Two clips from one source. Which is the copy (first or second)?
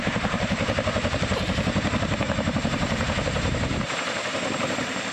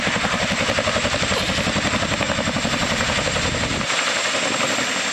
first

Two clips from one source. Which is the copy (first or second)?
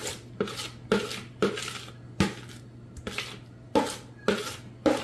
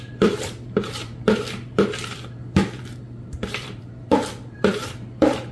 second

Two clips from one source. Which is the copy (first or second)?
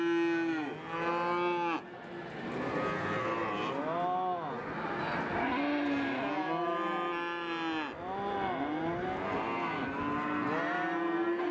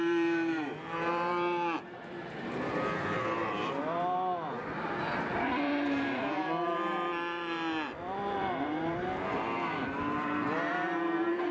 second